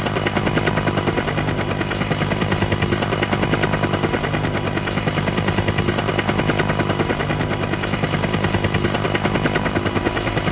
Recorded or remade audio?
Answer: recorded